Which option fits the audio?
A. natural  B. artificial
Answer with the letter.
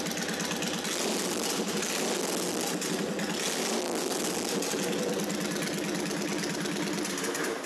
A